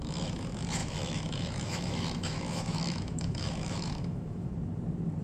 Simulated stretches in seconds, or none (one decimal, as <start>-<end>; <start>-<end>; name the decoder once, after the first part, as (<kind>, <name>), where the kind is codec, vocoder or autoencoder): 0.0-4.5 (autoencoder, DAC-VAE)